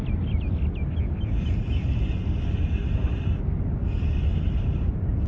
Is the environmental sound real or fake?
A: real